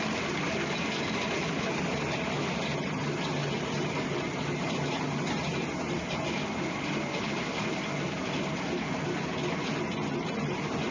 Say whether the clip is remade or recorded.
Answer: recorded